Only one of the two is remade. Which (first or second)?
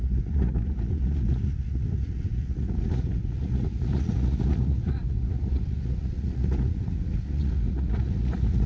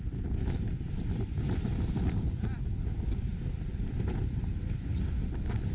first